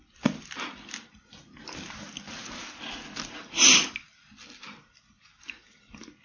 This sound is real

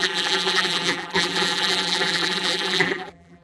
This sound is fake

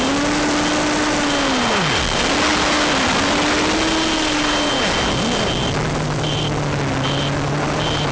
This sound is real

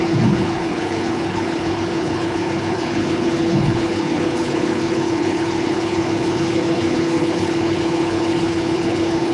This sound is fake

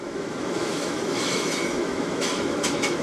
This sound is fake